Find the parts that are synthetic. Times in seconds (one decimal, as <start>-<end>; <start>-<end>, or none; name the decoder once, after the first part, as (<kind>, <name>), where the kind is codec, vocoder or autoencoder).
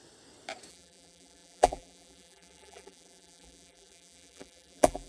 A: 0.7-5.1 (vocoder, BigVGAN v2)